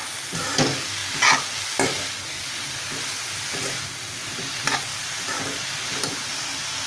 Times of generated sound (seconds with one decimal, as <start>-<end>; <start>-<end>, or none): none